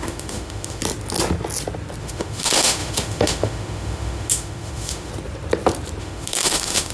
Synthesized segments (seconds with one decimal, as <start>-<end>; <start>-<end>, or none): 0.0-0.8; 2.0-5.1; 6.0-6.9